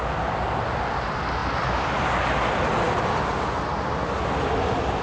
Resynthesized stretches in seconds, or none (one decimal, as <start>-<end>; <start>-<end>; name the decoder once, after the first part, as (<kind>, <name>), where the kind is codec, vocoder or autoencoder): none